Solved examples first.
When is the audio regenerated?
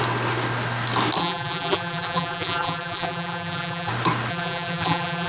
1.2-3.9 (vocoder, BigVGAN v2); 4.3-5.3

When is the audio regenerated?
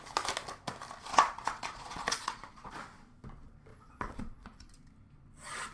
1.1-2.7 (vocoder, Vocos); 3.7-4.7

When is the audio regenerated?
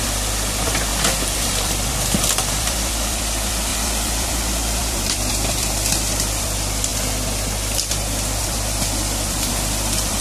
0.0-6.9 (vocoder, BigVGAN v2); 8.4-10.2